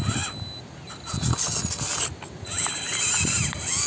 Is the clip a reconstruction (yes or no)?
no